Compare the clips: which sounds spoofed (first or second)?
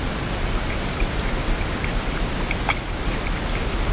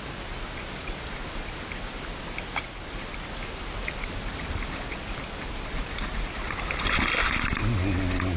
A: second